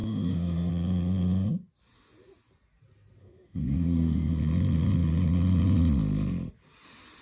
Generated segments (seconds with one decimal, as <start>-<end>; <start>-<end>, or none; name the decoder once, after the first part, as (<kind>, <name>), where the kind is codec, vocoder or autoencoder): 0.0-0.7 (autoencoder, DAC-VAE); 3.2-4.3